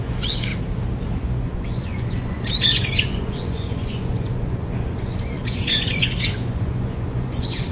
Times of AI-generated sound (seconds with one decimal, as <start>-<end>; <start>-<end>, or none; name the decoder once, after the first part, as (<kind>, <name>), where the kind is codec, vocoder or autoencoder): 0.0-0.5 (vocoder, Vocos); 1.2-7.7